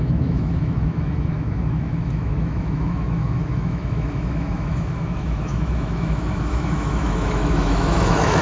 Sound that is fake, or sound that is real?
fake